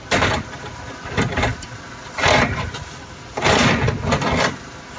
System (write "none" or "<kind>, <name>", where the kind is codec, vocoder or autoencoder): none